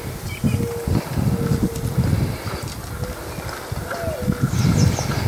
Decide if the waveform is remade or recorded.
recorded